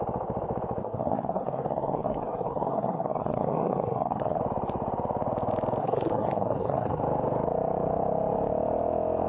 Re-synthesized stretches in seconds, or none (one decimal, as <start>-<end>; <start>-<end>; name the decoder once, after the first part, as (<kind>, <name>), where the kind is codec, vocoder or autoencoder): 0.8-4.4 (codec, SNAC); 5.8-7.0